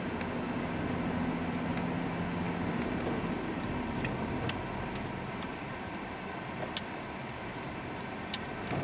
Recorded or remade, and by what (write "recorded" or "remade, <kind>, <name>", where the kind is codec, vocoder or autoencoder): recorded